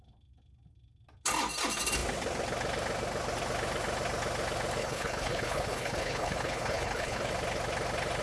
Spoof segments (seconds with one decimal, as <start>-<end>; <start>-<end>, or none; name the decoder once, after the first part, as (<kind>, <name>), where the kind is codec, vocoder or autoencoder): 4.8-7.3 (codec, HILCodec)